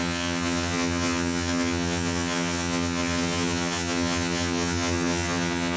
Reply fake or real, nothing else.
fake